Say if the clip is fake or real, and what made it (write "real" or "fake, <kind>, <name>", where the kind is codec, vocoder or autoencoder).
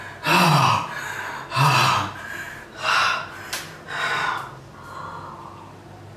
real